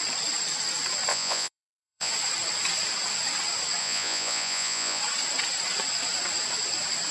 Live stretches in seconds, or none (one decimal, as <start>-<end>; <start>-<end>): 0.0-1.1; 2.1-3.8; 5.0-7.1